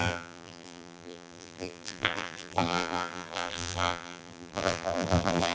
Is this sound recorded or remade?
remade